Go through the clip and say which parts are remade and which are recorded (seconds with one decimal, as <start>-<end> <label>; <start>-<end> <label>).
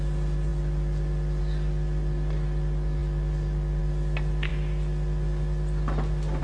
0.0-6.4 recorded